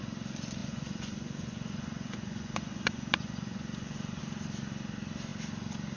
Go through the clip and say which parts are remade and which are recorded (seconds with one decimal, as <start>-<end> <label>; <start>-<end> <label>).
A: 0.0-0.6 recorded; 0.6-4.2 remade; 4.2-6.0 recorded